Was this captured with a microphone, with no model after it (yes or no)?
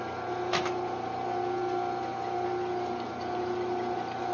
yes